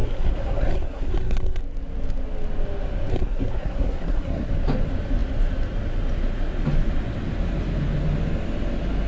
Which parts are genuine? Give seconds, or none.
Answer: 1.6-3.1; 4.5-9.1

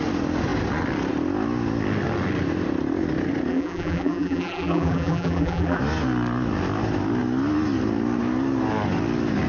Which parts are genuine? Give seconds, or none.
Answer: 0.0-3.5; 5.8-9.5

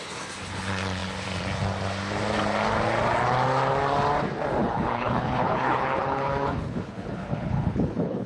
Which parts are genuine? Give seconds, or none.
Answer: 0.0-4.6

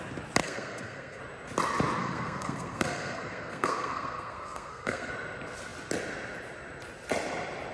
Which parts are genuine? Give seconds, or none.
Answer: 0.0-0.4; 1.2-2.0; 5.1-7.7

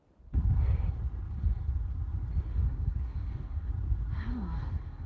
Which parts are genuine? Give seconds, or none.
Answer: 0.0-2.5; 3.7-4.3

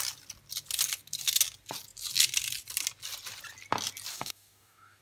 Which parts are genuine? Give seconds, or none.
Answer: 0.0-4.1